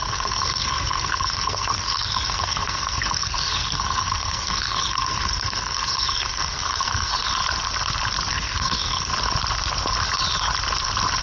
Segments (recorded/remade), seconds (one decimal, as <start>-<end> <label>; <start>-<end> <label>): 0.0-7.1 remade; 7.1-8.3 recorded; 8.3-9.1 remade; 9.1-11.2 recorded